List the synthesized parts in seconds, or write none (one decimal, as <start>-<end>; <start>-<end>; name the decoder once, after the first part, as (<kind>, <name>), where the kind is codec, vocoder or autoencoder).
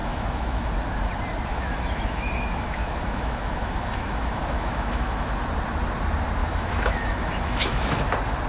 0.0-0.7 (autoencoder, DAC-VAE); 1.5-5.3; 6.4-8.0